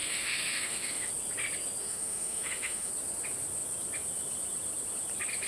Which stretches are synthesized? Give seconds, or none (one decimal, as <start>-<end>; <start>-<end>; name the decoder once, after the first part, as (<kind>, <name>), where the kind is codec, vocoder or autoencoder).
0.0-1.1 (autoencoder, DAC-VAE); 1.8-2.9